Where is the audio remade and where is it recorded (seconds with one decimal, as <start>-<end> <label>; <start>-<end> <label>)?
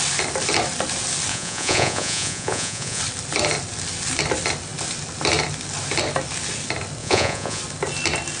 0.0-1.3 recorded; 1.3-3.0 remade; 3.0-7.0 recorded; 7.0-7.6 remade; 7.6-8.4 recorded